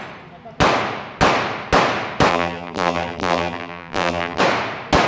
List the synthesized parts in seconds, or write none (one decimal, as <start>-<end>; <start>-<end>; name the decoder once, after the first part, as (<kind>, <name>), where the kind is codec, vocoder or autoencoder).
2.3-4.4 (vocoder, BigVGAN v2)